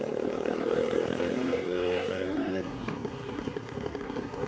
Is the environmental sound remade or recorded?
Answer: remade